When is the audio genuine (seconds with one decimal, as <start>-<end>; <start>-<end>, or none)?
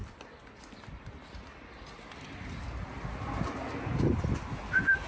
2.9-5.1